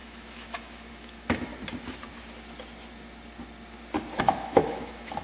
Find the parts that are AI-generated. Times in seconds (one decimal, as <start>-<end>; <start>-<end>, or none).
0.0-1.5; 4.2-5.2